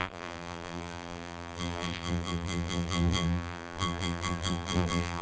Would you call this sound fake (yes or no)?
yes